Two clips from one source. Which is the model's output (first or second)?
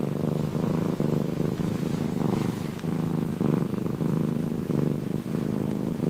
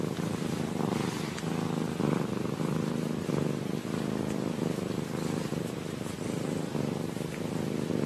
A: first